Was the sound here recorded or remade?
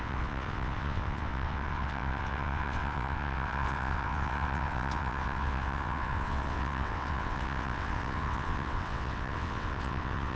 remade